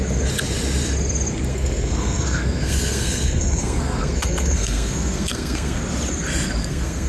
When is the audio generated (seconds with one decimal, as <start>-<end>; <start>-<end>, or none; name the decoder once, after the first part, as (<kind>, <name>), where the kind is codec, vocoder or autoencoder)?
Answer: 1.5-5.8 (codec, SNAC); 6.6-7.1